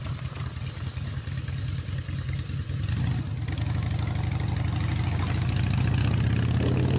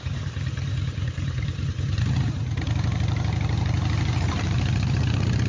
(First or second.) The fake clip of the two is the second